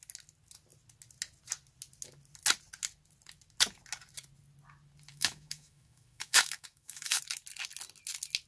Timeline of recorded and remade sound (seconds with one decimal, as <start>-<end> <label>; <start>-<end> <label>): 0.0-5.1 recorded; 5.1-7.2 remade; 7.2-8.5 recorded